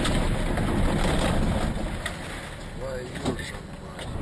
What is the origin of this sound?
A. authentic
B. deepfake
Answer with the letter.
A